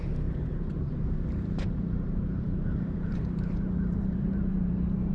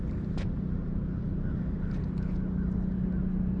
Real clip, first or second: second